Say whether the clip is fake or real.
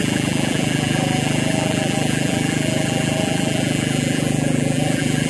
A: fake